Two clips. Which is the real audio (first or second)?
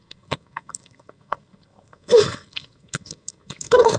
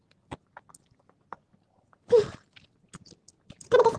second